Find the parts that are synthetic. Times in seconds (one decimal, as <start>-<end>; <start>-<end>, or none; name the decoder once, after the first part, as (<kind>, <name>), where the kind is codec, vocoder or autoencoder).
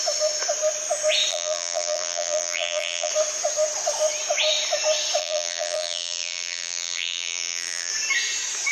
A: 1.3-3.1 (vocoder, BigVGAN v2); 5.2-7.9